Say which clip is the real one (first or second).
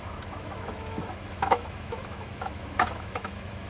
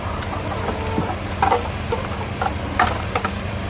second